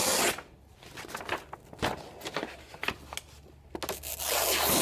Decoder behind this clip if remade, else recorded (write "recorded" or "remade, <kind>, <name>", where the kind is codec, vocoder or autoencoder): recorded